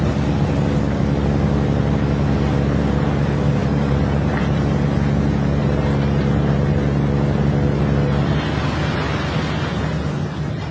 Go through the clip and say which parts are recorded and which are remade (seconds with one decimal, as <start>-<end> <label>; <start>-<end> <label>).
0.0-3.6 recorded; 3.6-4.4 remade; 4.4-5.6 recorded; 5.6-6.2 remade; 6.2-10.7 recorded